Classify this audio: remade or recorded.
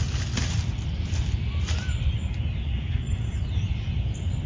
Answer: recorded